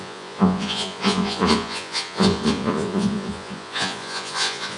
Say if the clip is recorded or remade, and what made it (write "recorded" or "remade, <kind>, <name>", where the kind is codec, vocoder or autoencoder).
remade, vocoder, Vocos